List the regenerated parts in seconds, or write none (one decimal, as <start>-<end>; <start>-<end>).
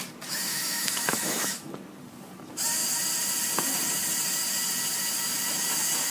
0.5-1.7